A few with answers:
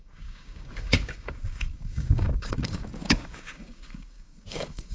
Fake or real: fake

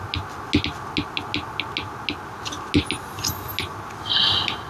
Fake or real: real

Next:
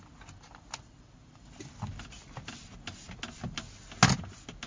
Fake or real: real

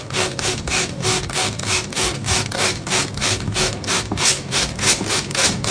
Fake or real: fake